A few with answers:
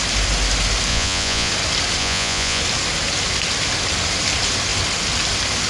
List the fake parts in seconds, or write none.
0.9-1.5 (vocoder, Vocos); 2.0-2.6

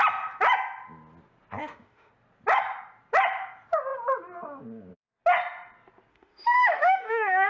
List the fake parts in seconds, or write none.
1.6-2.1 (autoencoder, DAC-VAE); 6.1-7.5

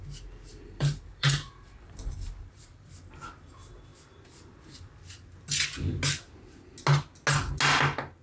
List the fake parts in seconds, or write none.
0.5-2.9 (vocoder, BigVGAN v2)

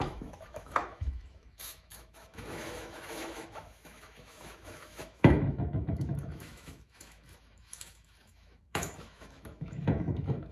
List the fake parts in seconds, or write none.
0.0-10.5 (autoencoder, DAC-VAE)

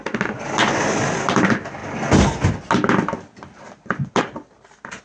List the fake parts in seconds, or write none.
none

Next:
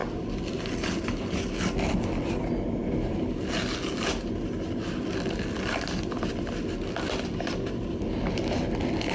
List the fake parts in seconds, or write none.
none

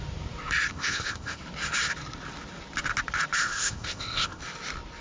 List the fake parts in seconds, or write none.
0.7-1.4 (codec, ZipCodec); 3.4-4.4

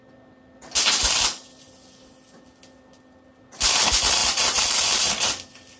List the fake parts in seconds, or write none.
4.2-5.2 (vocoder, BigVGAN v2)